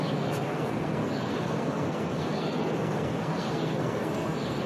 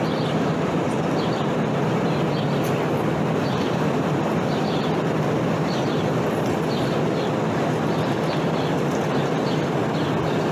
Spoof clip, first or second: first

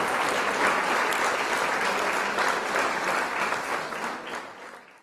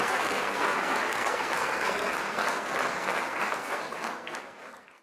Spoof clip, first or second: second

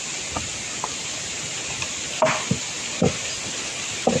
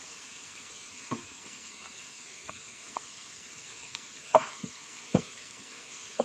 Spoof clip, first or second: second